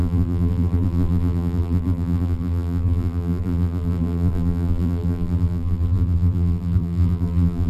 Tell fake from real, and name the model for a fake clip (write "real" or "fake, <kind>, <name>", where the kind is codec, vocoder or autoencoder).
fake, vocoder, BigVGAN v2